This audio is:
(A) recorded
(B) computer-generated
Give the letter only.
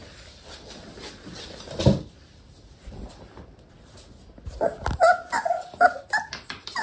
A